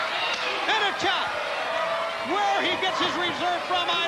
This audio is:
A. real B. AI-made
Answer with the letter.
A